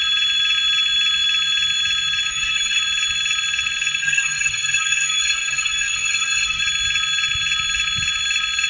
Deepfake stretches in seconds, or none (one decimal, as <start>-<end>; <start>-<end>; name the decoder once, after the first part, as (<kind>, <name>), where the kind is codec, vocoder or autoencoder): 2.3-2.8 (codec, SNAC); 4.0-6.6

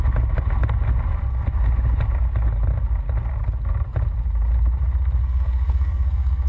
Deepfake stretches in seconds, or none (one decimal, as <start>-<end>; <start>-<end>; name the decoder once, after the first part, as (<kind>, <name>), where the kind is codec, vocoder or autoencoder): 5.2-6.5 (codec, SNAC)

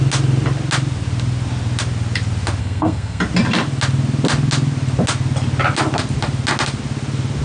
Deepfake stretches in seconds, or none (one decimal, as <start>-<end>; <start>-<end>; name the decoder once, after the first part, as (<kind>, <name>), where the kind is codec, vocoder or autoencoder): 2.6-3.2 (codec, SNAC)